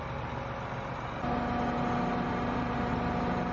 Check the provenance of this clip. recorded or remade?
recorded